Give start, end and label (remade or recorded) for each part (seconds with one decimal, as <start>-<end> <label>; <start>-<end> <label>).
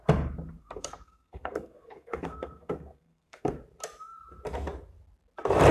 0.0-0.6 recorded; 0.6-3.6 remade; 3.6-5.7 recorded